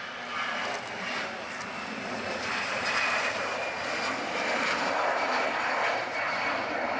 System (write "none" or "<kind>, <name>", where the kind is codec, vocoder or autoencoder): vocoder, BigVGAN v2